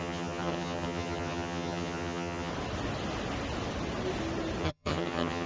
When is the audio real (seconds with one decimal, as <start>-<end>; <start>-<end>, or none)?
2.5-4.6